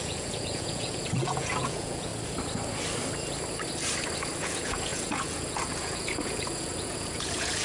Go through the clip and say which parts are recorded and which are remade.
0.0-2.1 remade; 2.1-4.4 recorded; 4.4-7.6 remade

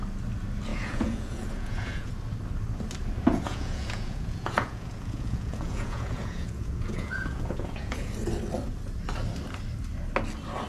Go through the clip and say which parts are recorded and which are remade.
0.0-0.7 recorded; 0.7-2.1 remade; 2.1-3.3 recorded; 3.3-8.1 remade; 8.1-10.7 recorded

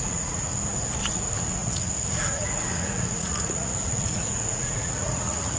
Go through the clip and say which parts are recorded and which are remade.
0.0-0.5 remade; 0.5-1.1 recorded; 1.1-5.6 remade